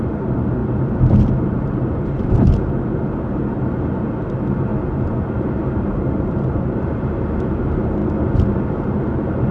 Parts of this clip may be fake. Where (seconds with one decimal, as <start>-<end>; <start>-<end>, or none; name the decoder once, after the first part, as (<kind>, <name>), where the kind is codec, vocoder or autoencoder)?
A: 0.0-4.7 (vocoder, BigVGAN v2); 5.2-8.0; 8.8-9.5